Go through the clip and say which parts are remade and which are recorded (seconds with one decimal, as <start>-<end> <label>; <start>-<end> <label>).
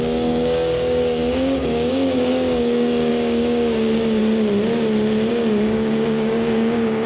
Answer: 0.0-4.2 remade; 4.2-5.3 recorded; 5.3-7.1 remade